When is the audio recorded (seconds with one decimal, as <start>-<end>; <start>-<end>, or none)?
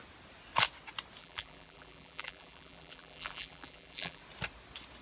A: 0.0-1.2; 4.2-5.0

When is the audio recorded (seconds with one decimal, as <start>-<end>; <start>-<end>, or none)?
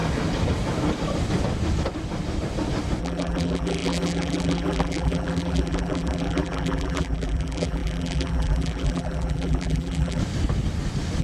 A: 0.0-3.0; 10.2-11.2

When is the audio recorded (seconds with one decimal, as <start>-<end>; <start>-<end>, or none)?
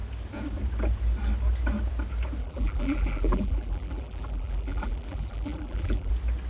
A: 0.0-2.4; 6.1-6.5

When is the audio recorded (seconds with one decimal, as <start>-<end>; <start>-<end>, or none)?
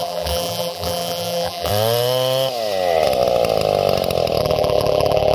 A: 1.7-4.4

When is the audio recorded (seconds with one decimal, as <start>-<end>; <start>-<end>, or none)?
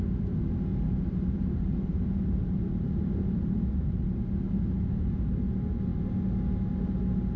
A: 0.0-0.7; 5.1-7.4